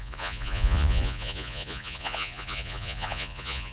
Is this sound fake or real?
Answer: fake